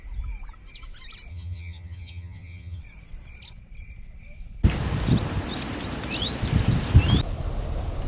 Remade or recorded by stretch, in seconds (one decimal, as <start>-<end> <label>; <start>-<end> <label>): 0.0-1.3 recorded; 1.3-2.8 remade; 2.8-8.1 recorded